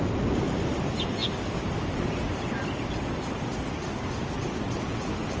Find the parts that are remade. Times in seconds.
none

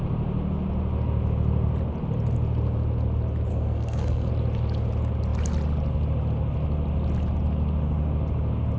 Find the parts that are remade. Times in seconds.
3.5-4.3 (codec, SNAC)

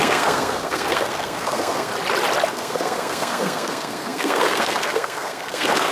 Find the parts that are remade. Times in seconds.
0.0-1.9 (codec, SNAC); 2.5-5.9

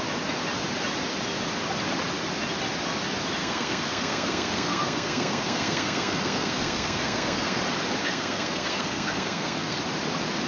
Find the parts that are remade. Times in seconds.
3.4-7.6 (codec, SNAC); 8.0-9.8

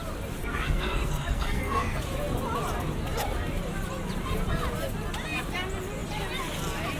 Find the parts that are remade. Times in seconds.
0.4-2.0 (codec, SNAC)

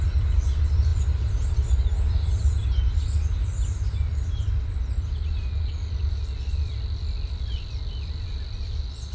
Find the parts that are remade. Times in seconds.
none

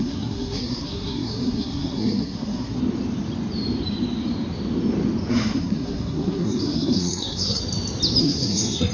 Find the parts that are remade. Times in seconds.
0.0-2.8 (codec, SNAC); 5.3-7.6; 8.2-8.9

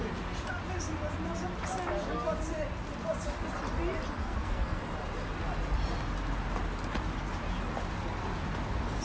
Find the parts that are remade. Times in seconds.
4.2-4.8 (codec, SNAC)